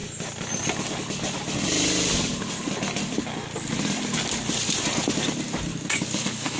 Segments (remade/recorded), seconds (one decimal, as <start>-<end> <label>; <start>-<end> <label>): 0.0-5.7 recorded; 5.7-6.6 remade